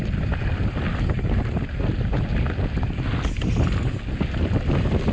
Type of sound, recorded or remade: recorded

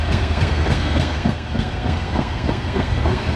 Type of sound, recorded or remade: remade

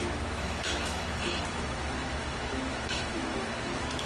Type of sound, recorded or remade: remade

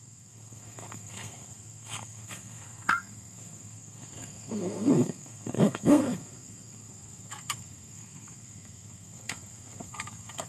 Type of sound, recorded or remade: remade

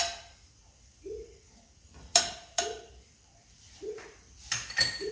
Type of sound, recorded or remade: remade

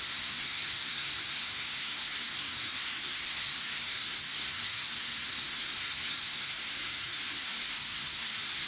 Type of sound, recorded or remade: remade